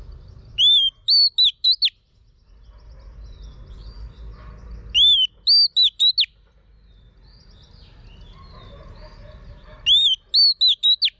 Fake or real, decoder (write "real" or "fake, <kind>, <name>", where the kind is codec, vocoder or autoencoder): real